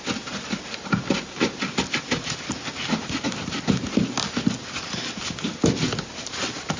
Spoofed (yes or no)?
no